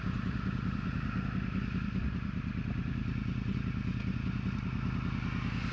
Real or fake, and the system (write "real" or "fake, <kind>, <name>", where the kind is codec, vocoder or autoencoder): real